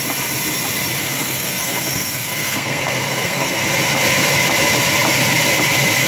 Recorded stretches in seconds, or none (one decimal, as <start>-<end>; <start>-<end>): 0.0-1.1; 3.6-6.1

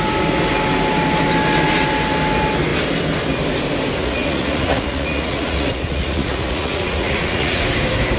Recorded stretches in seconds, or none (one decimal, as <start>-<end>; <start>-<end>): 0.0-4.0; 7.6-8.2

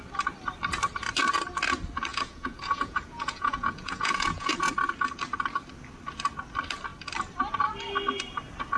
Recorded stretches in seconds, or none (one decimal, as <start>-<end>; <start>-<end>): 0.0-2.1; 4.7-8.8